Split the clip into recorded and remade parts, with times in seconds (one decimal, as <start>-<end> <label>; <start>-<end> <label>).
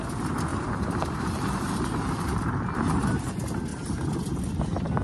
0.0-0.5 recorded; 0.5-3.3 remade; 3.3-5.0 recorded